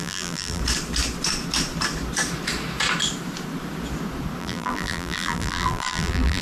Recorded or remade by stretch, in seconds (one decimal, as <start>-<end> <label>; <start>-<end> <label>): 0.0-0.6 remade; 0.6-4.4 recorded; 4.4-6.4 remade